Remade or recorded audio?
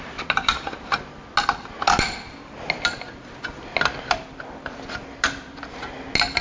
recorded